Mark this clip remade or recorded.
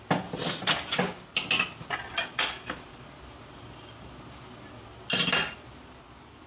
recorded